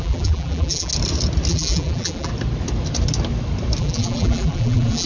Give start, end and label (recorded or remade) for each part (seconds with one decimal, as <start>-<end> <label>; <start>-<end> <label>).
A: 0.0-0.9 remade; 0.9-1.5 recorded; 1.5-2.3 remade; 2.3-3.8 recorded; 3.8-5.1 remade